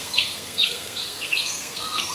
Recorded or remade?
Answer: remade